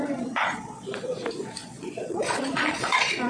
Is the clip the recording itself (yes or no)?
no